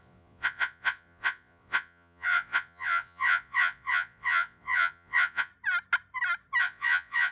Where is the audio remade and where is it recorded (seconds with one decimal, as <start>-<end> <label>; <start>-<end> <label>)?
0.0-5.5 remade; 5.5-6.6 recorded; 6.6-7.3 remade